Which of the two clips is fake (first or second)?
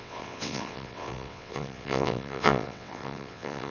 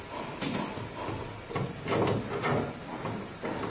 first